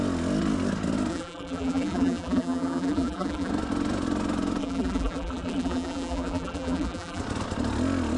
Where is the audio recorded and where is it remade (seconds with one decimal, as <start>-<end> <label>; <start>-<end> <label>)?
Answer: 0.0-1.1 recorded; 1.1-3.5 remade; 3.5-4.6 recorded; 4.6-7.2 remade; 7.2-8.2 recorded